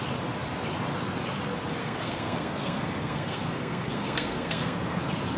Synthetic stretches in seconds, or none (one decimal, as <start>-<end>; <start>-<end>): 1.8-5.0